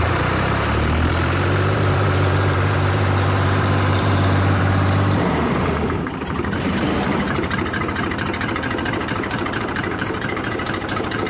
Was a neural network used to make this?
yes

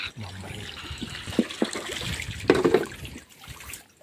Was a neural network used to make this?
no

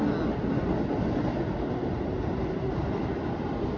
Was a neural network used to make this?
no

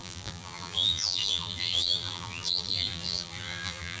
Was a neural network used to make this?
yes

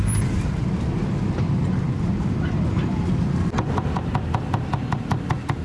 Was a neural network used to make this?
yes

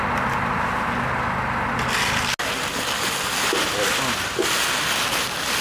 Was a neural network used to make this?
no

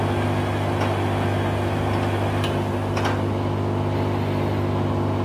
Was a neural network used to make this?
no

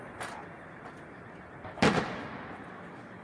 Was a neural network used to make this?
no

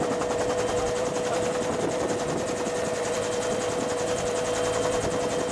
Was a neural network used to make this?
yes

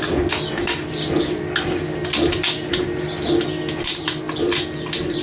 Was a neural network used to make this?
no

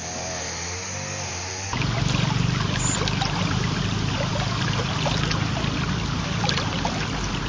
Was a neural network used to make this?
no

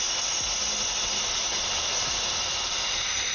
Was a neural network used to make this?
no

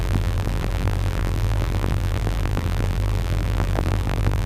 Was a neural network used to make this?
yes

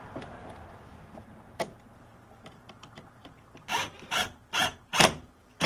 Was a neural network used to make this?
yes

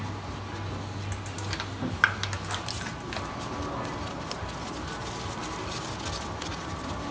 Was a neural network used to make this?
no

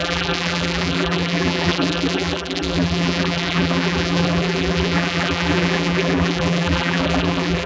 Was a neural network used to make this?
yes